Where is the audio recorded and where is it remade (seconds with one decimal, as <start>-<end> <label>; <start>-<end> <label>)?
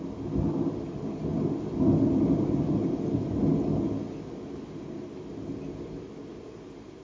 0.0-7.0 recorded